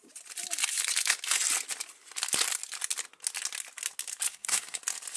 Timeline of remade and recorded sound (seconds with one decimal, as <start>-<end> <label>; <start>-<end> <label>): 0.0-4.3 recorded; 4.3-4.8 remade; 4.8-5.2 recorded